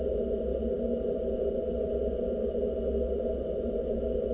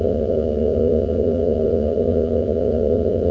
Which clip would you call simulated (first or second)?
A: second